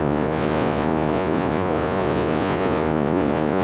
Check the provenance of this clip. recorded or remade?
remade